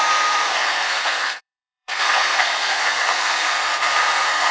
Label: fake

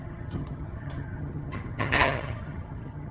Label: fake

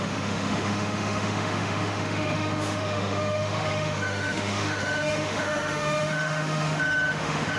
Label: fake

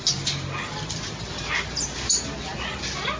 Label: real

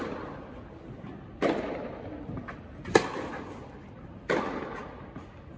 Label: real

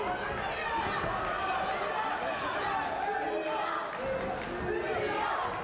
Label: real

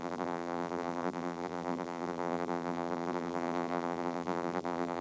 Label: fake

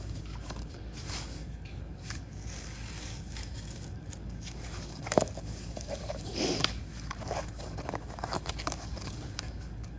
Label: fake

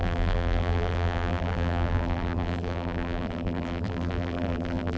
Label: fake